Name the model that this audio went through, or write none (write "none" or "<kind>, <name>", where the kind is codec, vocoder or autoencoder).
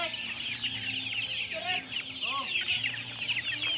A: none